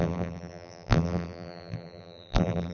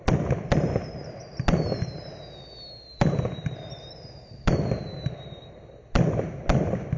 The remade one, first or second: first